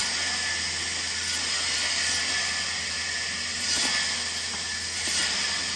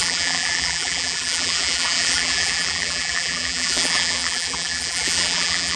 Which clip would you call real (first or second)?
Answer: first